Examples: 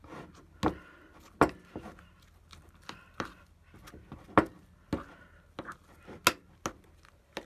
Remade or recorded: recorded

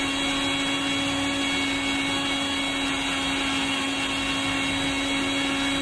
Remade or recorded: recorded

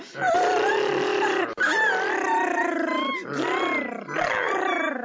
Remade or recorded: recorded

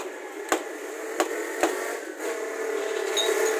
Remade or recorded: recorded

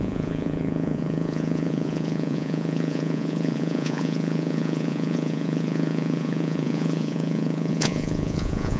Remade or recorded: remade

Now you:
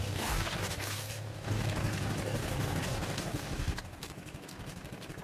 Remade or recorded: remade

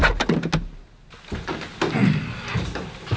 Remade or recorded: recorded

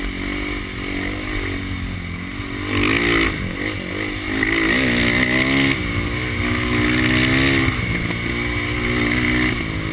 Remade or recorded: recorded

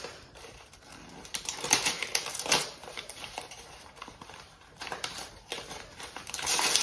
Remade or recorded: remade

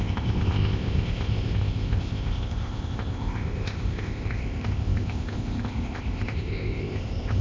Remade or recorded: remade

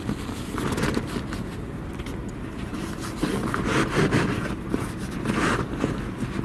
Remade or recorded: recorded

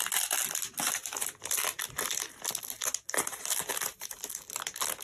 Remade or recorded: recorded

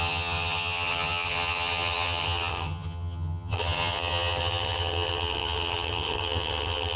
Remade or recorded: remade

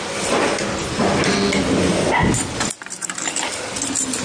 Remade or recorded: recorded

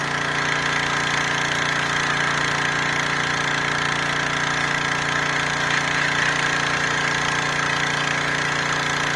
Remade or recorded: recorded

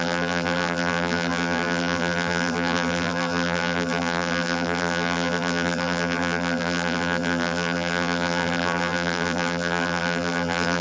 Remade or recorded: remade